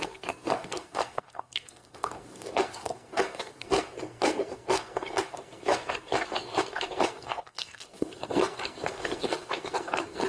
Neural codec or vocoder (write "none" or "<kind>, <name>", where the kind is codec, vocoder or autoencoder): codec, SNAC